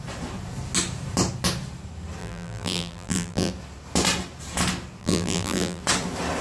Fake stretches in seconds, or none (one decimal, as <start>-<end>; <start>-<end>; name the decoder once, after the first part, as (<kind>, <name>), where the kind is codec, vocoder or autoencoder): 2.2-3.5 (vocoder, BigVGAN v2); 5.0-5.8